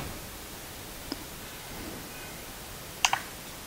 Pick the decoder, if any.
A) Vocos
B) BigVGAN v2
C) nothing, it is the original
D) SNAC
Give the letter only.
C